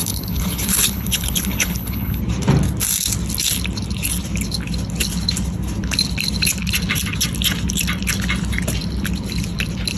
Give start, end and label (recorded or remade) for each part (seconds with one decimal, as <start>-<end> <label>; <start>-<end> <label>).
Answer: 0.0-2.2 remade; 2.2-10.0 recorded